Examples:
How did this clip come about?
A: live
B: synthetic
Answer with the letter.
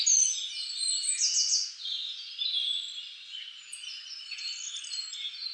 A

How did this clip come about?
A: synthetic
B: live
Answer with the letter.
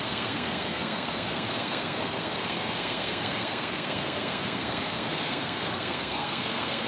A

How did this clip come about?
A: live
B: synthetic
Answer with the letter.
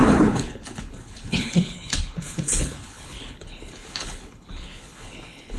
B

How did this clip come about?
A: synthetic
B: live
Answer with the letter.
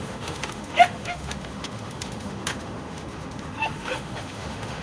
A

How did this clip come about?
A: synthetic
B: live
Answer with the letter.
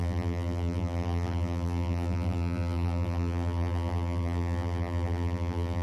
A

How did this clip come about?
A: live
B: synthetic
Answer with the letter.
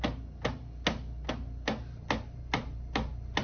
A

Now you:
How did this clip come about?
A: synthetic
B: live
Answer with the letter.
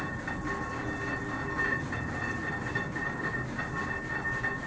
B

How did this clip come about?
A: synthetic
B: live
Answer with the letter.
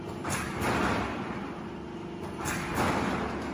B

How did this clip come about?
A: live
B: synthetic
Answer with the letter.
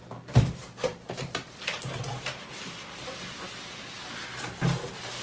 A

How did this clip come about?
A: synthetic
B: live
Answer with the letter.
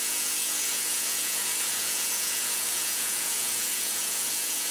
A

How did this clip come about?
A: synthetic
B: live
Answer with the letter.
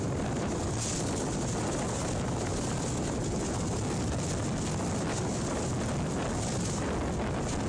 B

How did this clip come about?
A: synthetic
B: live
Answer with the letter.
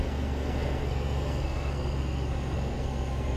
A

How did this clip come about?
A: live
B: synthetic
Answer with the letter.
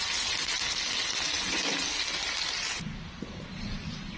A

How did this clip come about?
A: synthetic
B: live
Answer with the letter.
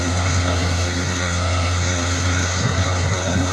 A